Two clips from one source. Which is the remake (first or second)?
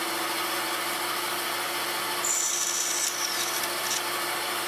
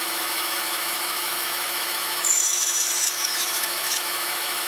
second